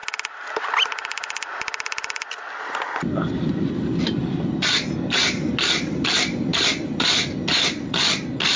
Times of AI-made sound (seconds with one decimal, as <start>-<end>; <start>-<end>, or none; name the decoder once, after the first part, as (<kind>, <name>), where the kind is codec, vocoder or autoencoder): none